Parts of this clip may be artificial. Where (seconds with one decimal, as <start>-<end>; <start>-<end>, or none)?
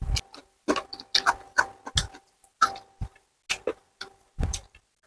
none